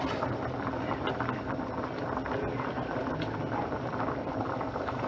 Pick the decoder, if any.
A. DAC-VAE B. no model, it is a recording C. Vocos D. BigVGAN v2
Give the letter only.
B